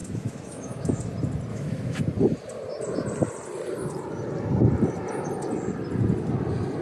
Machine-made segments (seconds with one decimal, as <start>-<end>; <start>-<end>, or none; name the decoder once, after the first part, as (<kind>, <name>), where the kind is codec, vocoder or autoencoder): 0.0-1.0 (autoencoder, DAC-VAE); 1.5-2.0